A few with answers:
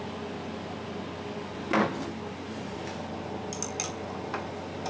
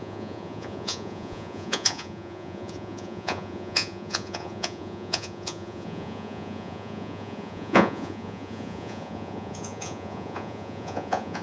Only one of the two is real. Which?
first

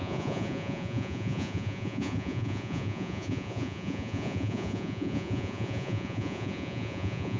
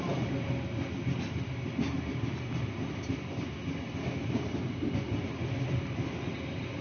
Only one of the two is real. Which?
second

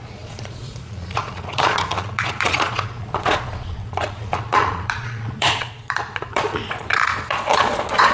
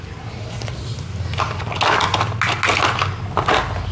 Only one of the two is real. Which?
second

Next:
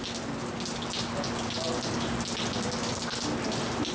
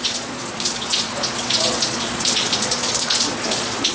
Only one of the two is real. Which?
first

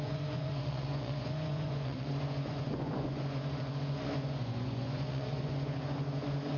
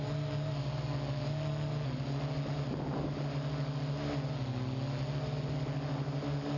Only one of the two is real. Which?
second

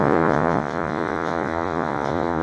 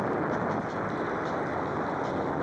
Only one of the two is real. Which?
second